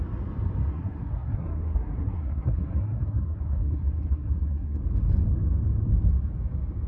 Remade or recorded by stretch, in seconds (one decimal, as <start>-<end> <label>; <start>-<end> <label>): 0.0-0.7 recorded; 0.7-4.8 remade; 4.8-6.9 recorded